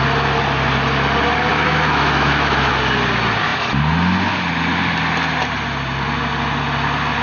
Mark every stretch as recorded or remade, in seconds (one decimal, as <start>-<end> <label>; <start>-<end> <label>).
0.0-1.5 recorded; 1.5-2.7 remade; 2.7-7.2 recorded